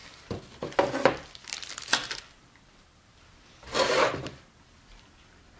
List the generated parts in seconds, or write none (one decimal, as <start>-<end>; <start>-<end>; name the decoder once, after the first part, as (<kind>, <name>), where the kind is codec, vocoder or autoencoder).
0.0-0.9 (vocoder, BigVGAN v2); 1.9-5.6